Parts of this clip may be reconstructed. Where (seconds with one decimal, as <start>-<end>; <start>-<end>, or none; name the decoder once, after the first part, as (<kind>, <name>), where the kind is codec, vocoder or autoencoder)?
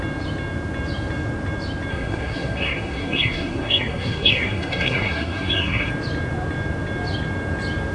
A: 1.9-5.9 (codec, SNAC)